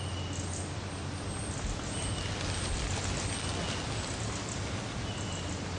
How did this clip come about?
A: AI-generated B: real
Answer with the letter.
B